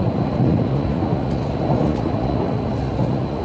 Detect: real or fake fake